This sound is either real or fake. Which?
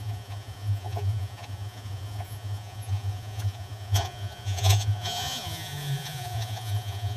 fake